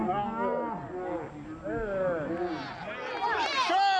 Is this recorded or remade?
recorded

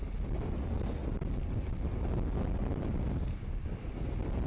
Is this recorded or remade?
recorded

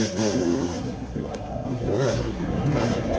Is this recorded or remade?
remade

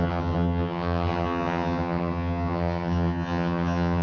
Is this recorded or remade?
remade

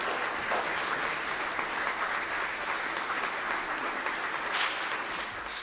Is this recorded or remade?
recorded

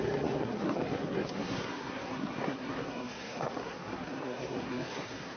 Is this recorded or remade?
remade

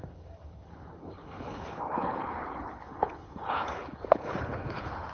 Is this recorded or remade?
remade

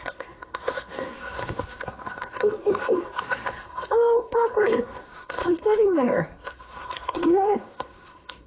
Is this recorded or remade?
remade